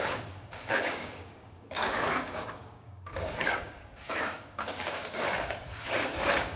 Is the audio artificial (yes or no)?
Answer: yes